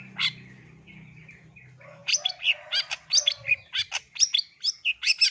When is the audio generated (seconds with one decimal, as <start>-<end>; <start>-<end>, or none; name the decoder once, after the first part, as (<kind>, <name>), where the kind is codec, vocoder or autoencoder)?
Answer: none